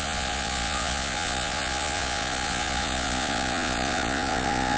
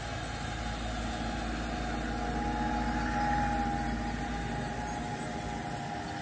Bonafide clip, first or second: second